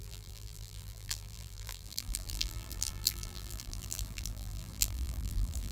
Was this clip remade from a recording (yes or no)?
yes